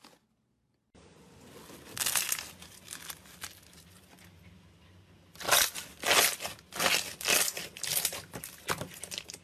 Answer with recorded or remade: recorded